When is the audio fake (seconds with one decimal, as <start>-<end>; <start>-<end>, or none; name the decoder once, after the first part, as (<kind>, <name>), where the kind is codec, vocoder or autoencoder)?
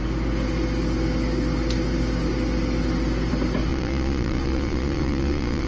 3.7-5.7 (vocoder, Vocos)